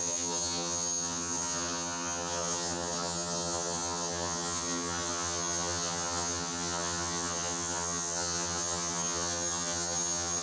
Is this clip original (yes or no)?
no